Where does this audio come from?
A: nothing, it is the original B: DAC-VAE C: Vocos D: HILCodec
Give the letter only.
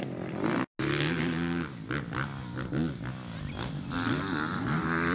A